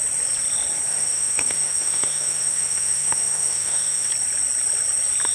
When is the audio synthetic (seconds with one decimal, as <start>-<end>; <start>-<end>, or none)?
0.9-4.1